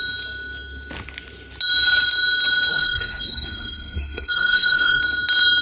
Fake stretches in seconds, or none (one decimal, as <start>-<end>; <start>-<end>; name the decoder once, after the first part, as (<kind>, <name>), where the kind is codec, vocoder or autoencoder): 2.7-5.0 (codec, SNAC)